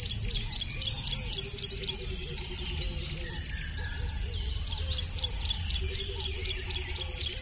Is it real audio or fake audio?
real